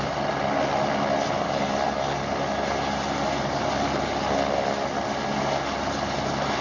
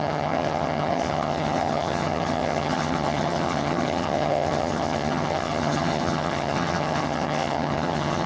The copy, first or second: second